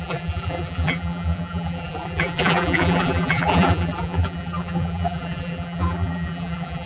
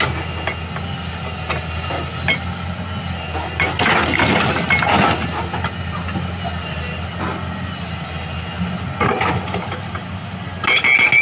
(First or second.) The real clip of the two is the second